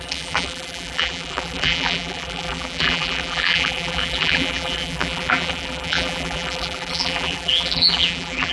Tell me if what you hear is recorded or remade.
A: remade